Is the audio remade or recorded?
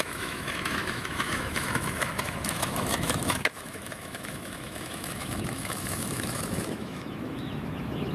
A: remade